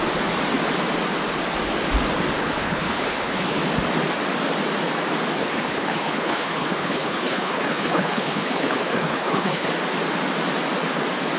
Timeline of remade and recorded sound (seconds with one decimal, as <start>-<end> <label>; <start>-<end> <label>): 0.0-2.4 recorded; 2.4-3.6 remade; 3.6-5.4 recorded; 5.4-9.7 remade; 9.7-11.4 recorded